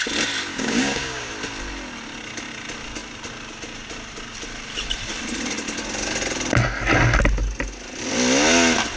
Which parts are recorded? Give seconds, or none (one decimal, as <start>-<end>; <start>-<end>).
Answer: 0.0-0.5; 1.3-9.0